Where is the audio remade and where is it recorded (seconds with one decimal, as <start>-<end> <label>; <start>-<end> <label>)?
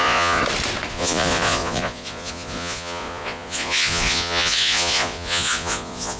0.0-0.4 remade; 0.4-0.9 recorded; 0.9-6.2 remade